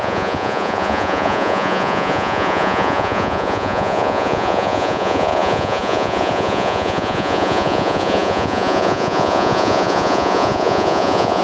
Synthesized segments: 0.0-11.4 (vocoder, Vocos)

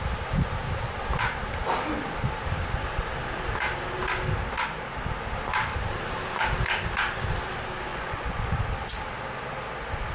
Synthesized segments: 7.9-8.6 (vocoder, Vocos)

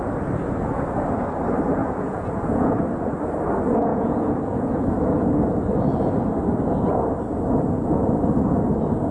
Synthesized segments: 1.8-2.7 (vocoder, Vocos); 3.9-4.9

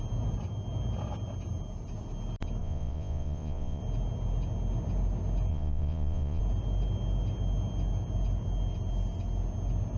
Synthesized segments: 2.6-3.8 (vocoder, Vocos); 5.5-6.4

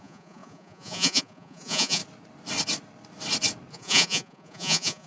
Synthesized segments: 0.0-2.0 (vocoder, Vocos); 3.7-5.1

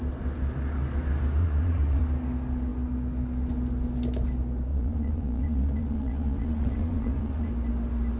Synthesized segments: 1.4-2.0 (vocoder, Vocos); 4.7-7.5

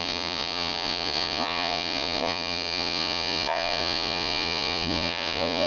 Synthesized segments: 0.0-5.7 (vocoder, Vocos)